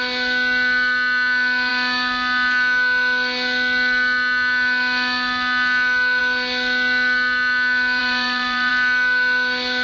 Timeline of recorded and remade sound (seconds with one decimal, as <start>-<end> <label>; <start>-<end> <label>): 0.0-8.0 recorded; 8.0-8.7 remade; 8.7-9.8 recorded